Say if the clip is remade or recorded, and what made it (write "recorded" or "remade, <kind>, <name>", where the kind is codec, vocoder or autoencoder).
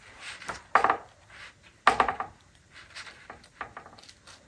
recorded